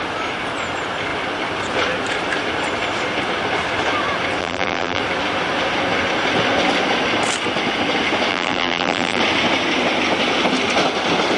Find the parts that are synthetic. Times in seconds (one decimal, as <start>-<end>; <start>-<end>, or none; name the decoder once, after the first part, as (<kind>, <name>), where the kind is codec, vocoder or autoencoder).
4.4-5.0 (vocoder, BigVGAN v2); 8.3-9.2